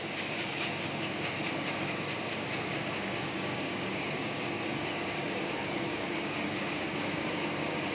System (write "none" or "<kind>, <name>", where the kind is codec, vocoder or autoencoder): codec, DAC